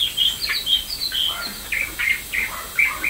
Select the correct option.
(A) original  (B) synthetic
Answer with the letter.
A